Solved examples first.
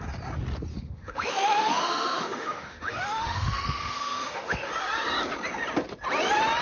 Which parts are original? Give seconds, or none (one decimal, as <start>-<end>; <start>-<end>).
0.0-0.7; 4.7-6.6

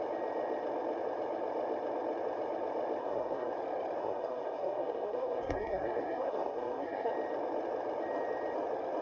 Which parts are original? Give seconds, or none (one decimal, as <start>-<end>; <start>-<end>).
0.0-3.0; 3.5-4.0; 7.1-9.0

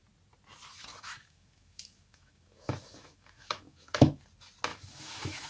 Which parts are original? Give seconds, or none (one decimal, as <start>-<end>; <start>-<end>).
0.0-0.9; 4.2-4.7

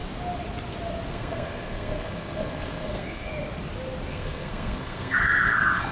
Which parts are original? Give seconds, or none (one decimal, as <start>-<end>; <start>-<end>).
0.0-1.1; 3.3-4.1